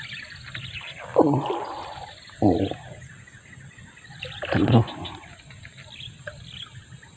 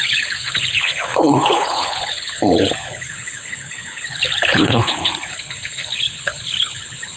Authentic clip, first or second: first